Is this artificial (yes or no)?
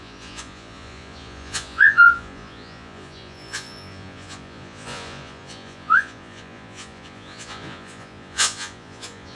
yes